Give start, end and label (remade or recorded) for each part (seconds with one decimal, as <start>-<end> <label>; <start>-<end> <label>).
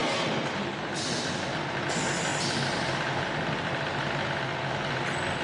0.0-5.4 recorded